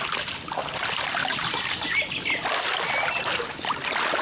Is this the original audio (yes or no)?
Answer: yes